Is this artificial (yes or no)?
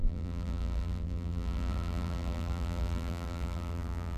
yes